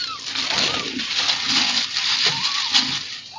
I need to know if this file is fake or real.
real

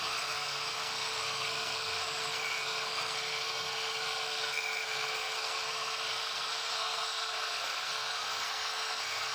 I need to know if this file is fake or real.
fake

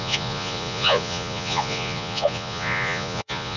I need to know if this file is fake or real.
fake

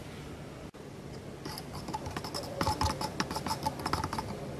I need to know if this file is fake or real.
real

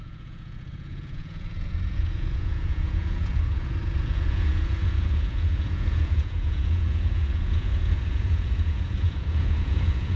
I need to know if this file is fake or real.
fake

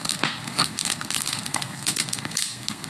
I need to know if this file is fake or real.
fake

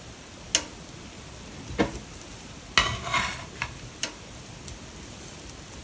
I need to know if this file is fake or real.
real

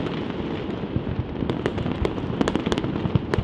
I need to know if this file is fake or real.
real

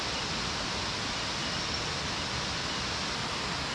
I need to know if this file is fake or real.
real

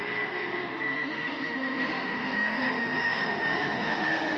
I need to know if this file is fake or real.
fake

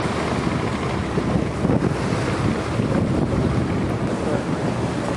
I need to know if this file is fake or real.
real